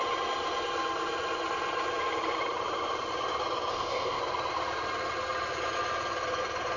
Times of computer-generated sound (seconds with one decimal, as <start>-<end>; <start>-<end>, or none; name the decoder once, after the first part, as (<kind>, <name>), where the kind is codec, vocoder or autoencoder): 3.7-4.2 (codec, ZipCodec)